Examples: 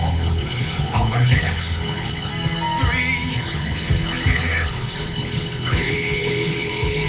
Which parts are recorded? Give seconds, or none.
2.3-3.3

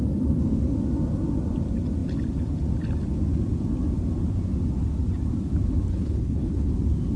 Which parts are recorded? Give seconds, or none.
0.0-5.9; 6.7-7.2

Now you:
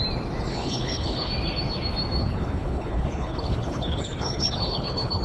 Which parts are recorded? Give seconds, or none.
0.0-0.5; 1.3-2.2

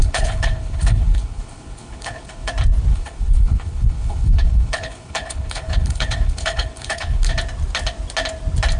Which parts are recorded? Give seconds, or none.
2.5-2.9; 7.3-8.8